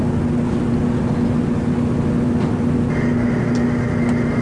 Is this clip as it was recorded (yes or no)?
yes